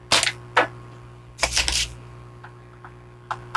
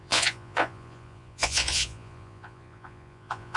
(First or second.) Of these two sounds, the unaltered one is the first